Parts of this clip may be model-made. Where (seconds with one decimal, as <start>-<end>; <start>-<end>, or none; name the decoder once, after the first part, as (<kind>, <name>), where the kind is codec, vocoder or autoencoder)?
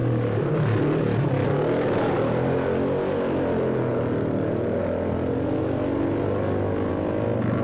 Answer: 0.0-0.5 (vocoder, BigVGAN v2)